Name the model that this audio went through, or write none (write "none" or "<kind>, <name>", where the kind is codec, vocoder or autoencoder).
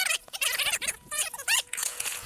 vocoder, Vocos